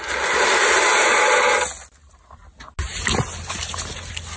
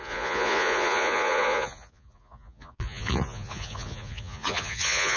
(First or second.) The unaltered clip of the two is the first